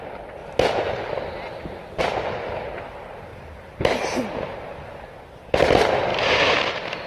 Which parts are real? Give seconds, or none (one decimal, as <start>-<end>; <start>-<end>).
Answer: 0.0-3.3; 4.9-6.1

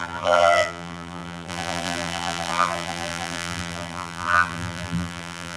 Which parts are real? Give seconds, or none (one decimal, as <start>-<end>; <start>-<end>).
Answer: none